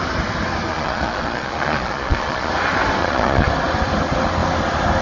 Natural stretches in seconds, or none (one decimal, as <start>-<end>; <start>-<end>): 0.0-0.7; 2.5-3.0; 3.5-5.0